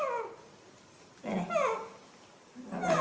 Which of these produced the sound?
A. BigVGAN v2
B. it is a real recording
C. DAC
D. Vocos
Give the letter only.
B